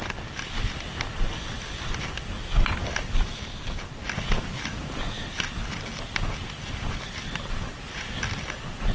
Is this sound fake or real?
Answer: real